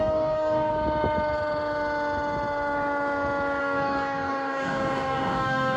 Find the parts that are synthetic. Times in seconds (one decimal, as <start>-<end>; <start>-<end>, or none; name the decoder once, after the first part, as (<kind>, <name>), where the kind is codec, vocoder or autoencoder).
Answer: 0.0-0.7 (codec, DAC); 3.6-5.8